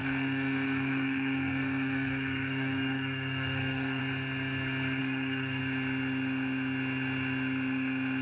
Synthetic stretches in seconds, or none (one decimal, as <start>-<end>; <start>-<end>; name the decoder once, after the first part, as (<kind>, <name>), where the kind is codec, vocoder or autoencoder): 0.0-4.0 (codec, SNAC); 5.0-5.6